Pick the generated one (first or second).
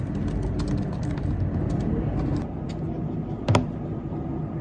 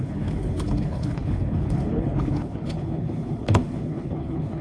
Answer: second